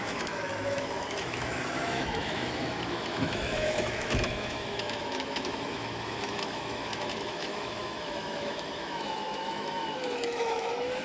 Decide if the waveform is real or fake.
fake